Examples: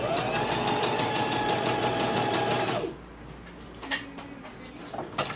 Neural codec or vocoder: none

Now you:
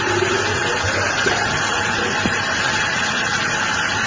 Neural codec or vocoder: none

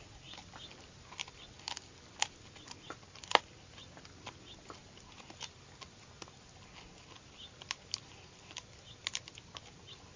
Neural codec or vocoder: none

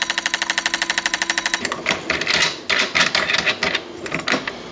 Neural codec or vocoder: none